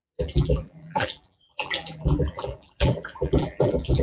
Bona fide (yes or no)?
no